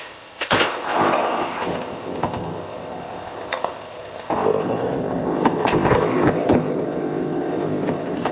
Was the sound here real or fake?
fake